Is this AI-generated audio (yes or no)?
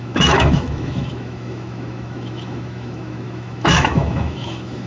yes